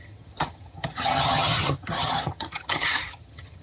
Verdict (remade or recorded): remade